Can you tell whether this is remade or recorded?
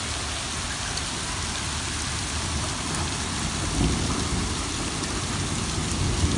recorded